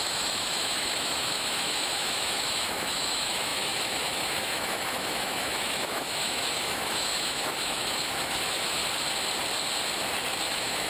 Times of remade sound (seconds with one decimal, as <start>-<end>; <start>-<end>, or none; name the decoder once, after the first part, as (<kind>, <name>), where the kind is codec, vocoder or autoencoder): 0.0-8.8 (autoencoder, DAC-VAE); 10.5-10.9